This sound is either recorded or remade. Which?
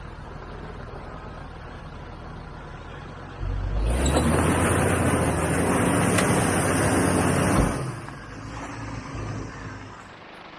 recorded